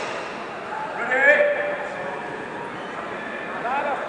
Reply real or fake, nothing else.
real